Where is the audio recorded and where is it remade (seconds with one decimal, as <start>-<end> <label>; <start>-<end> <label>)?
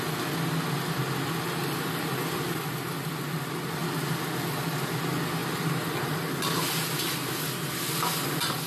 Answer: 0.0-8.7 recorded